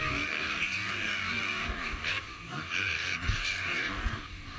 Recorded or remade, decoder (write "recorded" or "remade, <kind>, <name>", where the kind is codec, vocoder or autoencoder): remade, codec, DAC